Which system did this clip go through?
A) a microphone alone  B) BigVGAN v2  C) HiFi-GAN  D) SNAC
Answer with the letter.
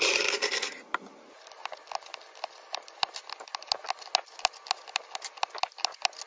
A